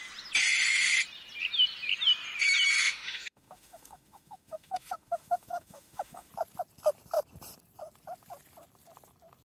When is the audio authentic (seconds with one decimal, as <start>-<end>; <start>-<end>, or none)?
0.0-2.8; 6.3-9.5

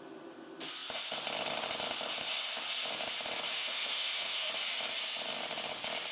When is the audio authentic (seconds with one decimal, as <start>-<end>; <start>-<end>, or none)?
0.0-3.5; 4.5-6.1